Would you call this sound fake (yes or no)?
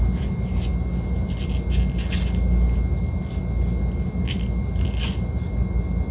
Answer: no